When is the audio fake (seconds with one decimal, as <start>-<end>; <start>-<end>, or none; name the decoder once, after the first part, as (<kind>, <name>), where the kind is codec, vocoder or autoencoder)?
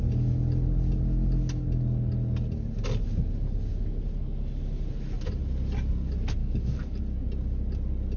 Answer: 6.4-7.0 (codec, DAC)